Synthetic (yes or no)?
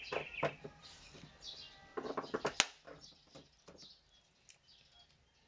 no